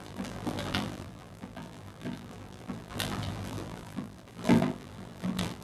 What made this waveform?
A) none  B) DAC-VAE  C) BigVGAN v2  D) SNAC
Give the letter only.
C